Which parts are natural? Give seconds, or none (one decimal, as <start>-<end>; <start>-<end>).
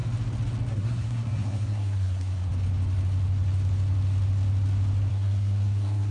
0.0-0.7; 2.5-5.1